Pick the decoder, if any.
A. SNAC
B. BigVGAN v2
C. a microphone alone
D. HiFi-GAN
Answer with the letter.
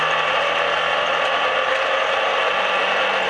C